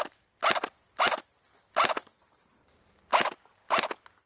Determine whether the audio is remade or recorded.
recorded